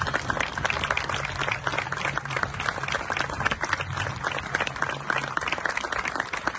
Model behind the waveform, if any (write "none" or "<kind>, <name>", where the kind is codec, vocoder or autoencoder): none